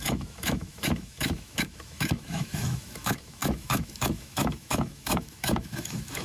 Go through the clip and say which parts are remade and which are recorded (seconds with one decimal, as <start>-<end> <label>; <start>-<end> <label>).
0.0-6.2 remade